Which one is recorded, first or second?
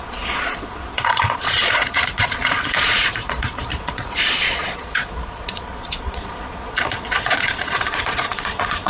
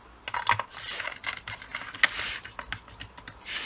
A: second